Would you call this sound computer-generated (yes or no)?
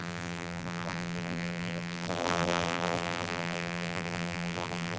yes